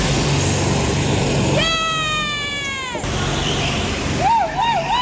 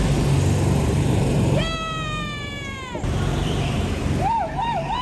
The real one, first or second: first